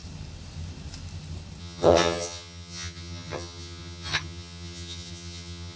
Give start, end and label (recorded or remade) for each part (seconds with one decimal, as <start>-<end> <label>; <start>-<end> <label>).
0.0-1.6 recorded; 1.6-5.8 remade